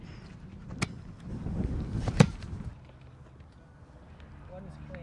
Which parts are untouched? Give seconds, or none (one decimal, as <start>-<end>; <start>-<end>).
0.0-5.0